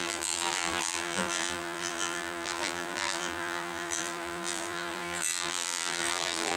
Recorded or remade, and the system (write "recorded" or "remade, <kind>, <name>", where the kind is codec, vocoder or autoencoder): remade, vocoder, BigVGAN v2